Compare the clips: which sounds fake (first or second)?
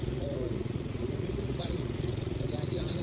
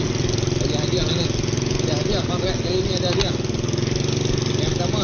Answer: first